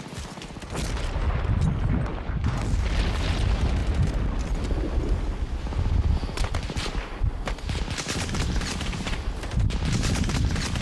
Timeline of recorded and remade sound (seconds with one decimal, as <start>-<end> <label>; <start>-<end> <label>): 0.0-10.8 recorded